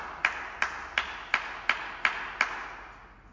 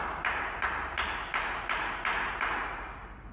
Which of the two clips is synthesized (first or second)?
second